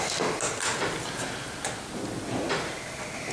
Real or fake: real